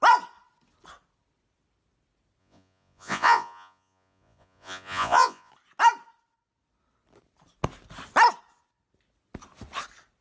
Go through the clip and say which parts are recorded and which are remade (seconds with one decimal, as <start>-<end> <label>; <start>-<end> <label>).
0.0-2.4 recorded; 2.4-5.5 remade; 5.5-10.2 recorded